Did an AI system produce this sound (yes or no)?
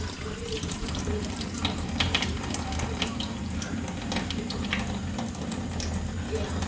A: yes